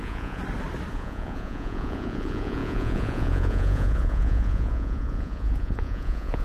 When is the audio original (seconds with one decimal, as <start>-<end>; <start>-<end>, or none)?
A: 0.4-0.9